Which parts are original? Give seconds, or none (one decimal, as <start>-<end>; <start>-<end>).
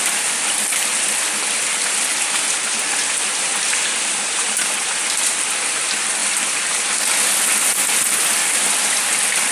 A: 0.0-9.5